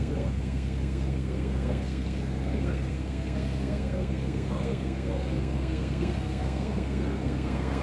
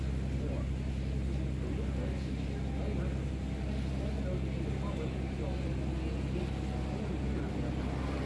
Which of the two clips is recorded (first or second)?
second